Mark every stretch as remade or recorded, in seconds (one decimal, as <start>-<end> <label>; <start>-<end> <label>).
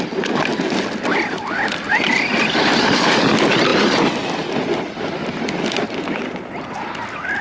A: 0.0-7.4 recorded